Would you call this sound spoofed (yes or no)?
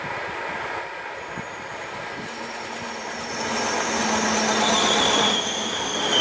no